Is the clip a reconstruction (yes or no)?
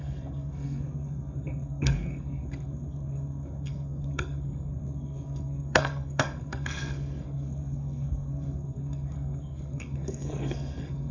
yes